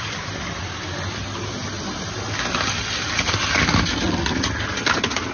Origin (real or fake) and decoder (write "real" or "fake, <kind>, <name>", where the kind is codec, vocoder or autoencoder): real